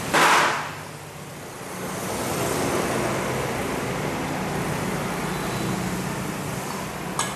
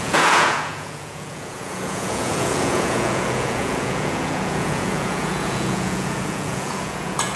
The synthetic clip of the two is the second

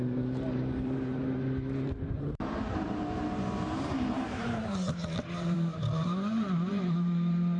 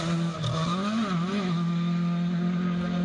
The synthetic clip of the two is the first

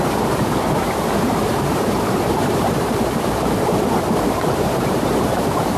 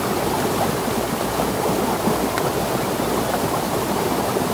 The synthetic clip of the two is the first